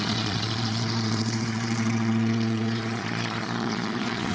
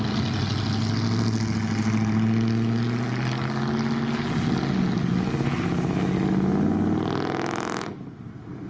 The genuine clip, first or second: second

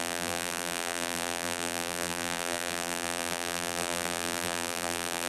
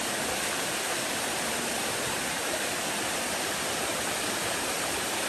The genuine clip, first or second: second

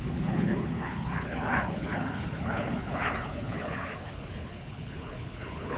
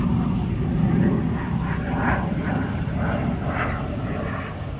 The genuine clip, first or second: second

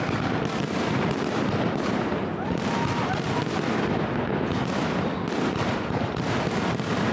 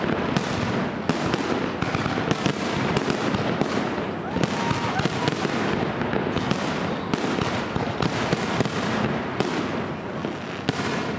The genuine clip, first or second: second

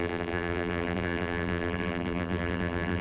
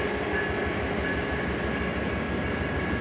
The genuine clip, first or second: second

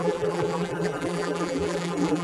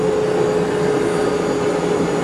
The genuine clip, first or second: second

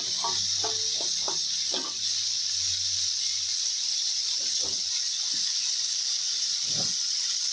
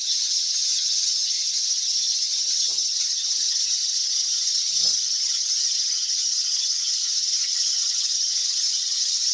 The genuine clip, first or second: first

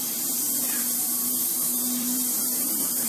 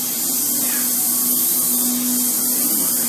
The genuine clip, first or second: second